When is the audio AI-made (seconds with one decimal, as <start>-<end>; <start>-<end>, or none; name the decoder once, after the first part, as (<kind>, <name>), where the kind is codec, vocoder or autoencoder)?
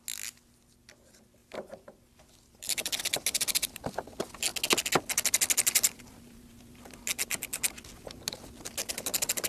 1.4-3.0 (vocoder, BigVGAN v2)